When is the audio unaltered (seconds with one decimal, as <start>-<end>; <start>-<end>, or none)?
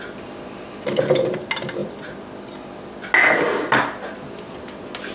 0.0-5.1